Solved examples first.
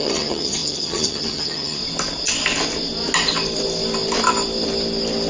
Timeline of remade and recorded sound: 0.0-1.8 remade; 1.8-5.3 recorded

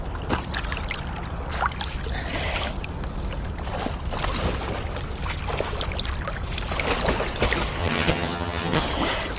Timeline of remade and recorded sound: 0.0-7.8 recorded; 7.8-8.8 remade; 8.8-9.4 recorded

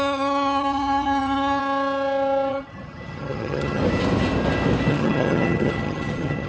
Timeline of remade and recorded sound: 0.0-1.6 remade; 1.6-2.5 recorded; 2.5-3.8 remade; 3.8-4.9 recorded; 4.9-6.5 remade

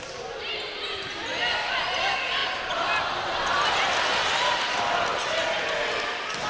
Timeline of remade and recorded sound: 0.0-6.5 recorded

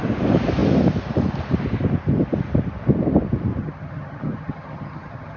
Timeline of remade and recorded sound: 0.0-3.6 recorded; 3.6-5.4 remade